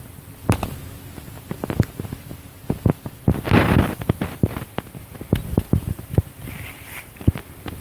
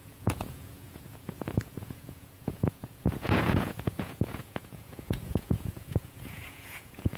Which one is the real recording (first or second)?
first